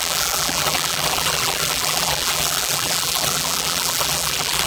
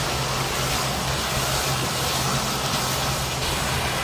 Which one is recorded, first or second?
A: second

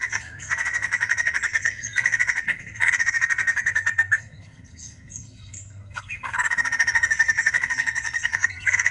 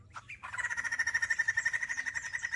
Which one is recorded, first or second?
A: second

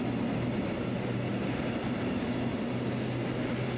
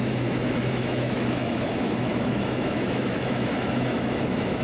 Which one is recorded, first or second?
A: first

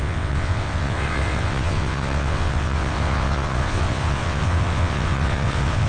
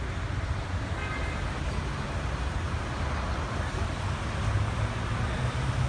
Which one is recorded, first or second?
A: second